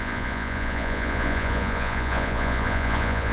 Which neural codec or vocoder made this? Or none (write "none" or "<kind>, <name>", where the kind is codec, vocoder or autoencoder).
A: vocoder, Vocos